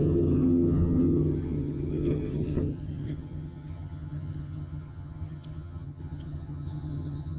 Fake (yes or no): yes